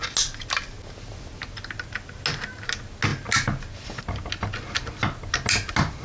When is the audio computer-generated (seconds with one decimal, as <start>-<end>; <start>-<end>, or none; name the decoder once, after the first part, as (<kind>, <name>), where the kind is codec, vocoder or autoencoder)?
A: none